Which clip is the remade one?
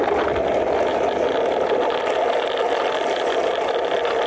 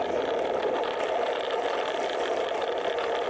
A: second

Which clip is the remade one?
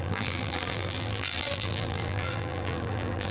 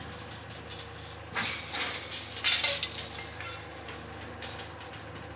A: first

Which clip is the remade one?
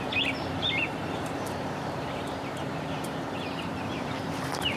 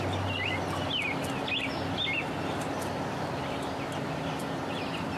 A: first